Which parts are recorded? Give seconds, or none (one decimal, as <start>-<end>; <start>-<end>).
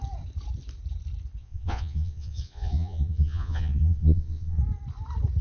0.0-1.4; 4.6-5.4